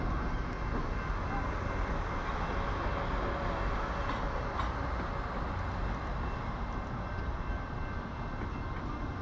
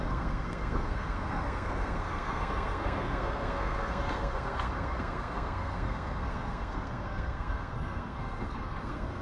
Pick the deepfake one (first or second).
second